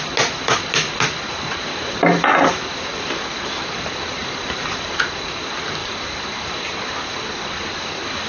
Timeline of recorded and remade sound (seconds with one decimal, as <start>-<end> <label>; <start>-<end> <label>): 0.0-4.2 recorded; 4.2-4.9 remade; 4.9-5.8 recorded; 5.8-6.6 remade; 6.6-8.3 recorded